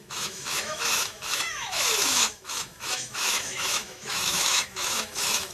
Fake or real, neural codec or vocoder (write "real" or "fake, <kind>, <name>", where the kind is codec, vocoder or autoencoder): fake, autoencoder, DAC-VAE